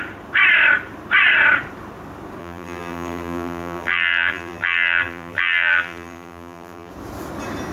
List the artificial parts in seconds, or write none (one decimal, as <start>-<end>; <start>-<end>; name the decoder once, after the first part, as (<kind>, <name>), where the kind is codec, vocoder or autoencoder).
2.4-6.9 (vocoder, BigVGAN v2)